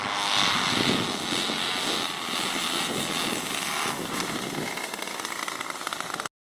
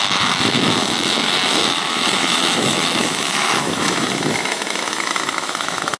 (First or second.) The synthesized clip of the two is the second